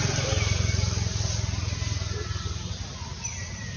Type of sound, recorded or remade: recorded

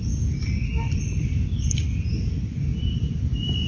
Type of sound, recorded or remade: recorded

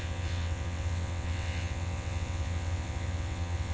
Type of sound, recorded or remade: remade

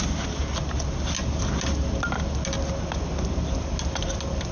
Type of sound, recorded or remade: recorded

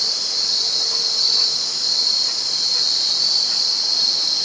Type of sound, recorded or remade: recorded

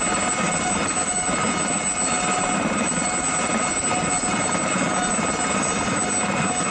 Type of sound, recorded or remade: recorded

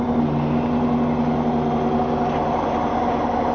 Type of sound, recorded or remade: recorded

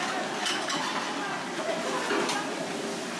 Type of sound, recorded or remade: recorded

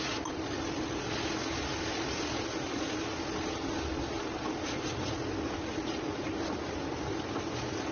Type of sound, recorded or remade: recorded